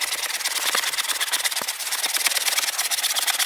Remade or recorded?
recorded